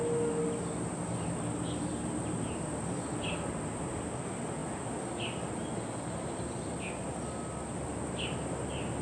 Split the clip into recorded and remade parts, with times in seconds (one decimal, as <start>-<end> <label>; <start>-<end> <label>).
0.0-9.0 recorded